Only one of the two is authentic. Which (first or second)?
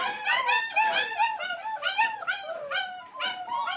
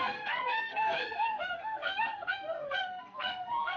first